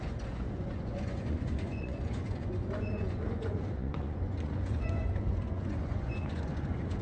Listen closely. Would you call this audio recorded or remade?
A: remade